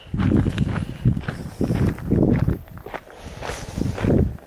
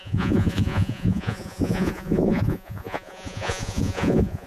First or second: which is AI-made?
second